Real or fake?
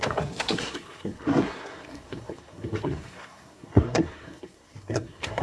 fake